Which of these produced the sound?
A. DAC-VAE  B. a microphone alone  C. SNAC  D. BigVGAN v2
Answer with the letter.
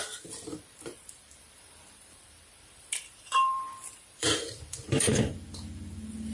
D